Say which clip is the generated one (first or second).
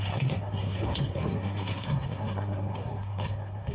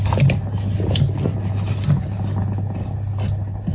first